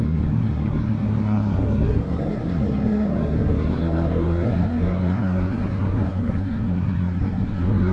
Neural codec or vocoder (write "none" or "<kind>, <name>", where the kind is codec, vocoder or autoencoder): codec, SNAC